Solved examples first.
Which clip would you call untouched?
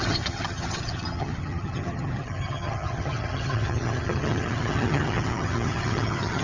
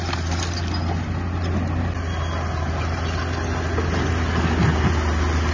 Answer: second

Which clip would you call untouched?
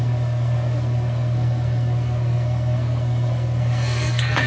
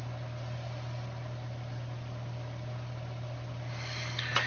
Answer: second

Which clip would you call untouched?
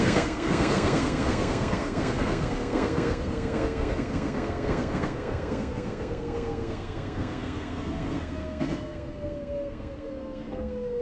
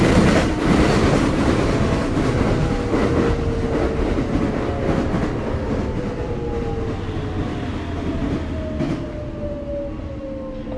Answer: second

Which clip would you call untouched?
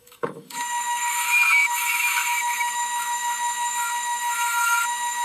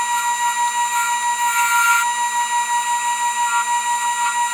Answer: second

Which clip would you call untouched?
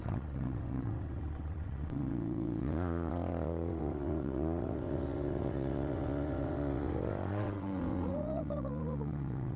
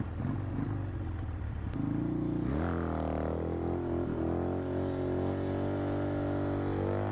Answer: second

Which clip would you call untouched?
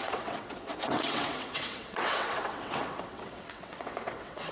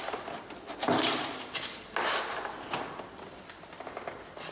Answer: second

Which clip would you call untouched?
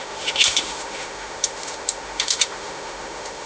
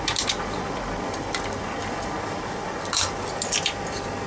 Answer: second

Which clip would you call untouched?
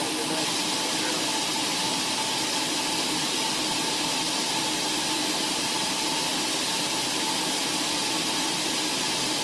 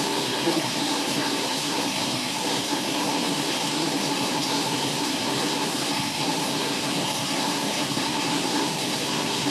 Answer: first